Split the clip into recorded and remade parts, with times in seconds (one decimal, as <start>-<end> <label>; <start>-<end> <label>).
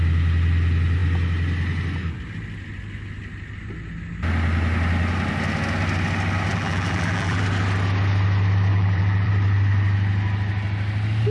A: 0.0-6.5 recorded; 6.5-7.4 remade; 7.4-8.7 recorded; 8.7-9.3 remade; 9.3-11.3 recorded